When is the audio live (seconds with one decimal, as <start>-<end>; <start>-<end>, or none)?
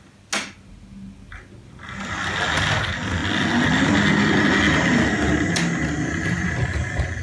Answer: 0.0-7.2